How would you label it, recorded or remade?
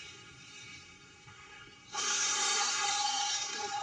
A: remade